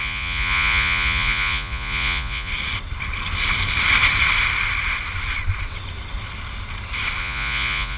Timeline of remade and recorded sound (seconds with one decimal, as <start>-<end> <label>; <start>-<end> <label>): 0.0-2.5 remade; 2.5-7.2 recorded; 7.2-8.0 remade